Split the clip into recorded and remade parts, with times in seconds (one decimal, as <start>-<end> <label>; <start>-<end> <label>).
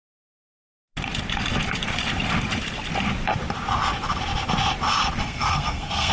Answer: 0.0-5.2 recorded; 5.2-6.1 remade